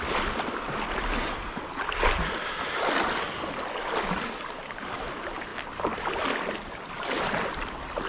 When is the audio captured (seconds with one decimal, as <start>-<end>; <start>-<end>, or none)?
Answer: 0.0-8.1